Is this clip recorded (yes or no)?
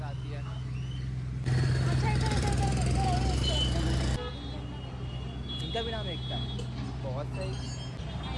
yes